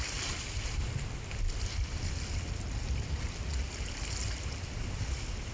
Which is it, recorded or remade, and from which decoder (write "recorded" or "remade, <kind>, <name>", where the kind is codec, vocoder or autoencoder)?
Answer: recorded